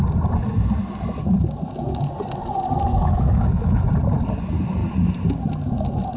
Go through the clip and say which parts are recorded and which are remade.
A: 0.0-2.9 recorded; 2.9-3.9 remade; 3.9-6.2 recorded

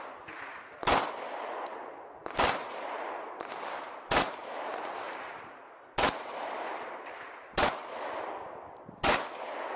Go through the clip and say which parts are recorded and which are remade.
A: 0.0-4.4 recorded; 4.4-7.7 remade; 7.7-9.8 recorded

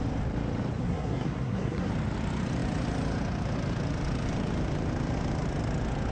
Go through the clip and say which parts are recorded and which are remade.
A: 0.0-0.8 recorded; 0.8-1.9 remade; 1.9-6.1 recorded

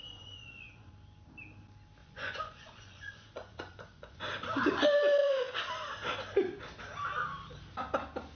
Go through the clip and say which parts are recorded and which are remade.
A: 0.0-0.9 remade; 0.9-2.0 recorded; 2.0-4.2 remade; 4.2-5.2 recorded; 5.2-5.7 remade; 5.7-8.3 recorded

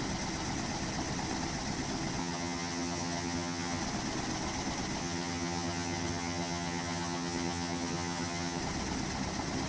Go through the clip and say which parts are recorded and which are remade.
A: 0.0-2.2 recorded; 2.2-3.8 remade; 3.8-5.0 recorded; 5.0-8.6 remade; 8.6-9.7 recorded

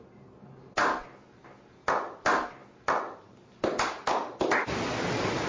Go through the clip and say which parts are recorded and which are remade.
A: 0.0-0.8 recorded; 0.8-1.4 remade; 1.4-5.5 recorded

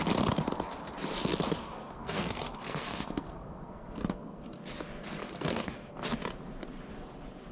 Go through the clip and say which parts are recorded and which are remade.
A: 0.0-1.6 recorded; 1.6-4.4 remade; 4.4-5.2 recorded; 5.2-5.9 remade; 5.9-7.5 recorded

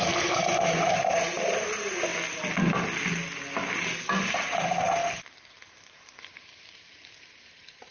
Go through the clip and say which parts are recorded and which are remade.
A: 0.0-2.1 remade; 2.1-4.3 recorded; 4.3-5.0 remade; 5.0-5.5 recorded; 5.5-7.9 remade